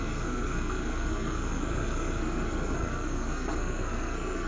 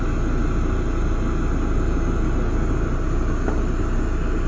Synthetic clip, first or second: first